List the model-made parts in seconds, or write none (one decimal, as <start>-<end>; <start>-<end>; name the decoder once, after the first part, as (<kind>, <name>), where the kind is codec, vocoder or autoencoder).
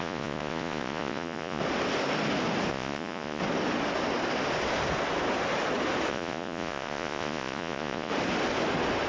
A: 0.0-1.6 (vocoder, Vocos); 2.7-3.4; 6.1-8.1